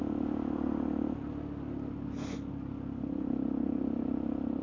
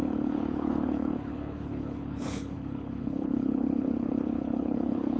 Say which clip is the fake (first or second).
second